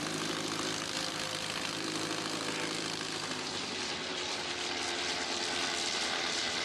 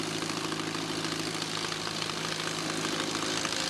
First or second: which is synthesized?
first